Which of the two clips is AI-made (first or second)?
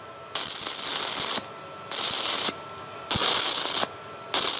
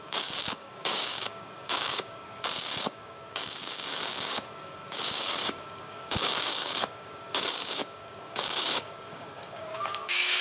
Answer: second